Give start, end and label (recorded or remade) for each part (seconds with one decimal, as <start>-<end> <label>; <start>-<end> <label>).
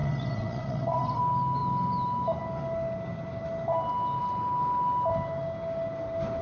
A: 0.0-1.2 remade; 1.2-6.4 recorded